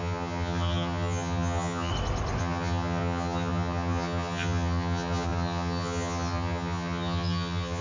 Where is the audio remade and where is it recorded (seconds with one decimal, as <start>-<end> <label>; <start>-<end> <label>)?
0.0-1.9 remade; 1.9-2.4 recorded; 2.4-7.8 remade